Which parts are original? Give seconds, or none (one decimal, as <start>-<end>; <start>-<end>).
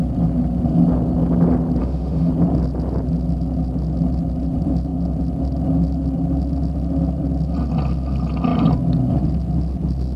0.0-1.8; 2.3-10.2